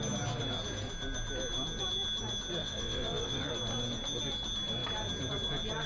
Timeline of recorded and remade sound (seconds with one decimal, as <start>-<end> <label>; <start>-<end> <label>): 0.0-2.6 recorded; 2.6-3.5 remade; 3.5-5.9 recorded